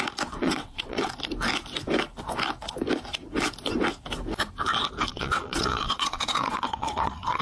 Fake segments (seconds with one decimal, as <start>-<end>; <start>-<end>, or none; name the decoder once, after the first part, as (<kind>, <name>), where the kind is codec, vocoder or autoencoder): 0.4-1.1 (vocoder, WaveNeXt); 5.1-7.4